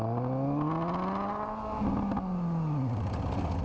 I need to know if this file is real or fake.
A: real